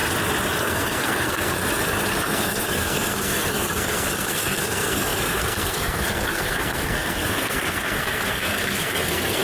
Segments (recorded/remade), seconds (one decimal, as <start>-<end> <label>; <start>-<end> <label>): 0.0-0.6 recorded; 0.6-1.6 remade; 1.6-2.2 recorded; 2.2-9.4 remade